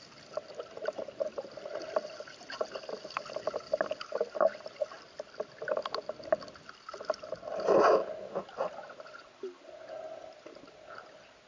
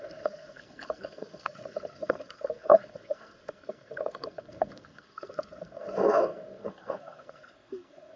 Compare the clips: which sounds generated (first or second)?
second